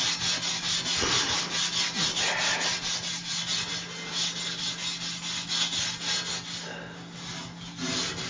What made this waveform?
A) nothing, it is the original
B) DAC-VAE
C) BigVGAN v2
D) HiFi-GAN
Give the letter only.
A